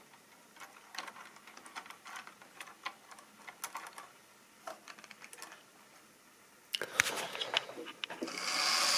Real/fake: real